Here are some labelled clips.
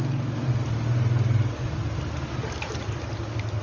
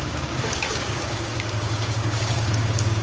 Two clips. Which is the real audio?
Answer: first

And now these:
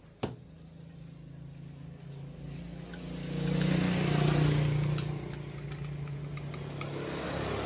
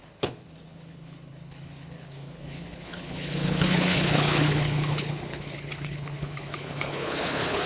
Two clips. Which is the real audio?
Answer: first